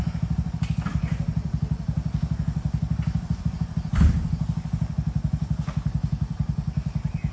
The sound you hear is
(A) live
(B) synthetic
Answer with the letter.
A